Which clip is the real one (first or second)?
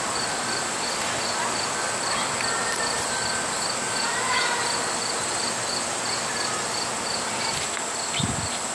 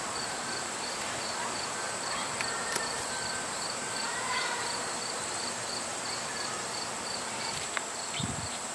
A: first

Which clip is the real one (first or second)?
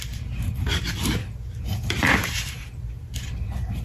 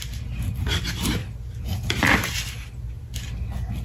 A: second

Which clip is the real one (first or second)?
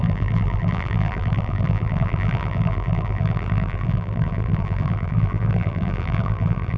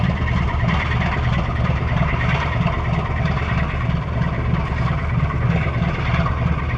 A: second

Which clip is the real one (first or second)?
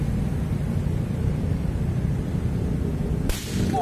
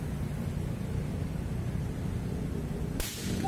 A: second